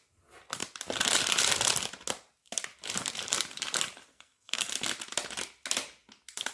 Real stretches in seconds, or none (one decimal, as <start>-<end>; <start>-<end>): 0.0-4.1; 4.7-6.5